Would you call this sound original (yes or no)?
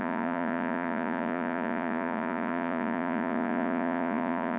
no